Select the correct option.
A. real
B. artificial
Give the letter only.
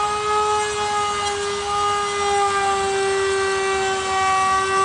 A